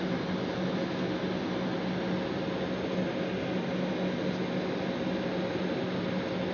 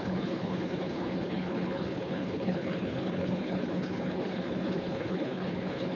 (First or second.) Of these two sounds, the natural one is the first